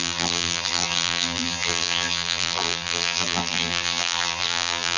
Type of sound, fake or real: fake